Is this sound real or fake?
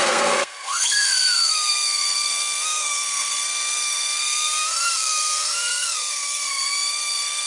fake